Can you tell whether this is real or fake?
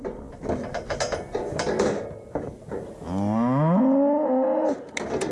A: real